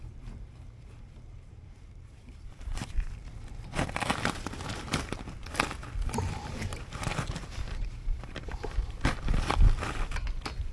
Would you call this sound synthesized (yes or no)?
yes